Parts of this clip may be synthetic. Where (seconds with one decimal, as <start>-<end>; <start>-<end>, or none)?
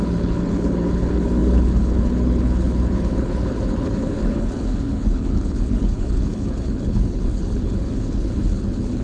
0.0-9.0